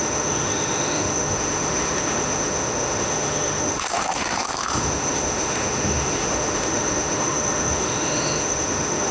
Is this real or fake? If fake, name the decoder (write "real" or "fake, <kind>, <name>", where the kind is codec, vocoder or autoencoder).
fake, autoencoder, DAC-VAE